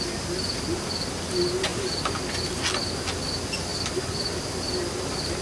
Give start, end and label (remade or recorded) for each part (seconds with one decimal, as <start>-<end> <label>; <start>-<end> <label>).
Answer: 0.0-5.4 recorded